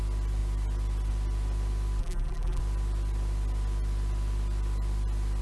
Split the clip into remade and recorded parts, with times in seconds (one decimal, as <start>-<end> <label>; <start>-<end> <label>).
0.0-2.0 recorded; 2.0-2.6 remade; 2.6-5.4 recorded